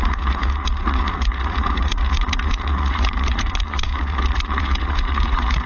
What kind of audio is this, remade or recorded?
remade